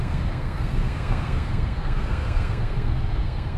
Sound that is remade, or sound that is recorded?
remade